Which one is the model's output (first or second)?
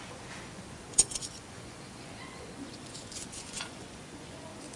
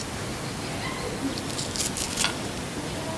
first